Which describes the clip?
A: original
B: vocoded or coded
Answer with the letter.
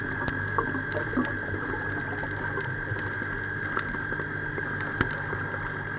A